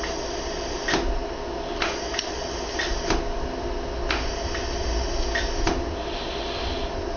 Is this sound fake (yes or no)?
no